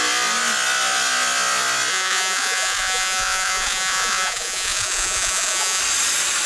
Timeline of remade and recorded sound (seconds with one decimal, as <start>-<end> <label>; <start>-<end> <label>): 0.0-1.9 recorded; 1.9-5.8 remade; 5.8-6.5 recorded